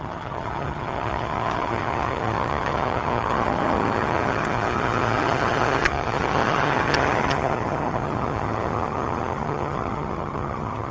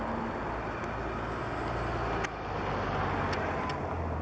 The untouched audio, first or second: second